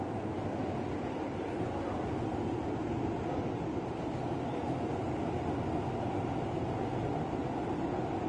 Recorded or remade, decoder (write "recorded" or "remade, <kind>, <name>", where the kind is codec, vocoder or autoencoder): recorded